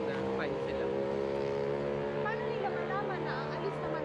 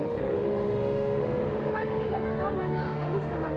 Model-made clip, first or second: second